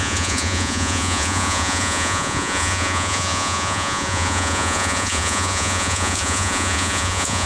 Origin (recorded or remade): remade